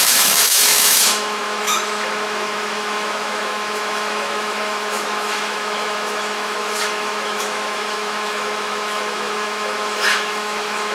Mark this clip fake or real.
fake